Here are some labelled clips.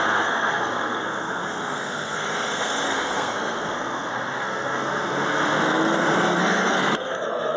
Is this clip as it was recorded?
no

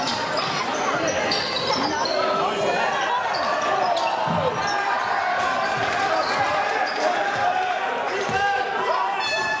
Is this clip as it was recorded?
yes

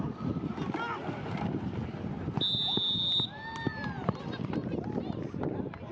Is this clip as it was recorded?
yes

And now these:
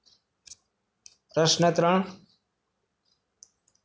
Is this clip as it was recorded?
yes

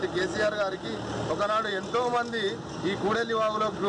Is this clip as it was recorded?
yes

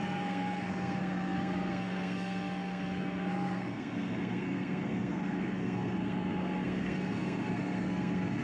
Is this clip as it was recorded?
no